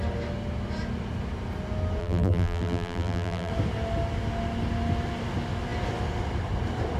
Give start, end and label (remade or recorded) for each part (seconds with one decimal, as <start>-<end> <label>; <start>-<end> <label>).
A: 0.0-2.0 recorded; 2.0-3.5 remade; 3.5-7.0 recorded